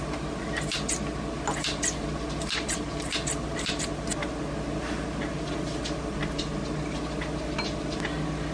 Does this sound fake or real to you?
real